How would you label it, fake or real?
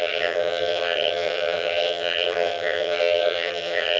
fake